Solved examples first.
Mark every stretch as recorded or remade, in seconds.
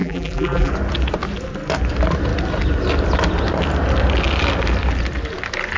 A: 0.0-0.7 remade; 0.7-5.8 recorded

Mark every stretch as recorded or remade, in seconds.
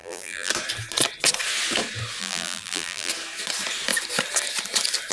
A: 0.0-0.5 remade; 0.5-2.2 recorded; 2.2-3.1 remade; 3.1-5.1 recorded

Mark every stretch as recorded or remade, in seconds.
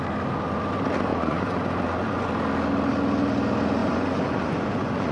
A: 0.0-1.1 recorded; 1.1-2.3 remade; 2.3-3.8 recorded; 3.8-5.1 remade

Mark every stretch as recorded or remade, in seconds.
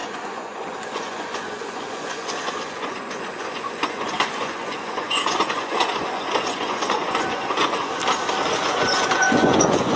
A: 0.0-8.0 remade; 8.0-8.5 recorded; 8.5-10.0 remade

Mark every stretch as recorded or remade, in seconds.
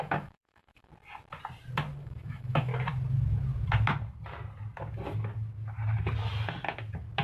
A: 0.0-0.9 remade; 0.9-2.0 recorded; 2.0-2.7 remade; 2.7-7.2 recorded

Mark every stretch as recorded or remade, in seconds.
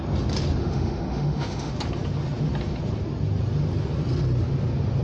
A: 0.0-0.6 recorded; 0.6-1.7 remade; 1.7-5.0 recorded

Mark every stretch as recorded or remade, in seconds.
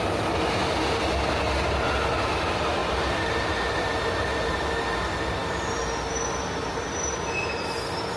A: 0.0-8.2 recorded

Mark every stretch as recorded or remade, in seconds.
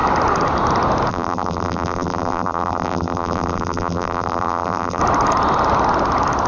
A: 0.0-1.1 recorded; 1.1-5.0 remade; 5.0-6.5 recorded